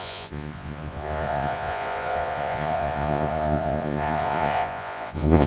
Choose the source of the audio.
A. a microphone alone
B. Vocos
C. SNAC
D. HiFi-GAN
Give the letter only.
B